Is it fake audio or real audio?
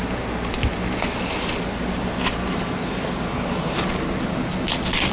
real